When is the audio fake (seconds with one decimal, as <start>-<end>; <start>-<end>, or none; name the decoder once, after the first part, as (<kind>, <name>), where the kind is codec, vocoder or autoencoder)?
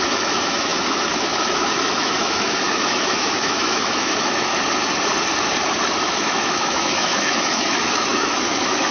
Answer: 0.0-4.5 (autoencoder, DAC-VAE); 6.0-8.9